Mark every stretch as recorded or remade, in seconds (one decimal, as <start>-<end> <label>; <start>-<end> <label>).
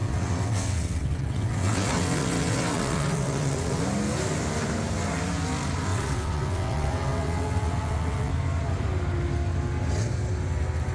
0.0-3.8 remade; 3.8-5.9 recorded; 5.9-8.3 remade; 8.3-10.9 recorded